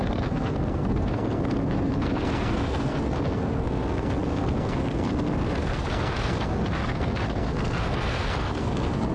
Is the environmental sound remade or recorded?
remade